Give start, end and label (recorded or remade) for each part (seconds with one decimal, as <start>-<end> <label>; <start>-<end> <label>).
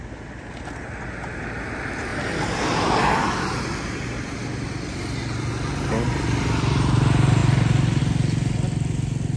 0.0-9.4 recorded